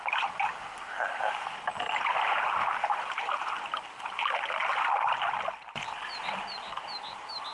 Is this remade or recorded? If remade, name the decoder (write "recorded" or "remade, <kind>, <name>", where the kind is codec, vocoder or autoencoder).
recorded